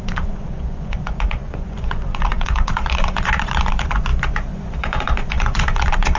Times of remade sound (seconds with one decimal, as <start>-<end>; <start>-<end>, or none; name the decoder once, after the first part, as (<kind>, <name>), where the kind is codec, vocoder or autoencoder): 0.0-6.2 (vocoder, Vocos)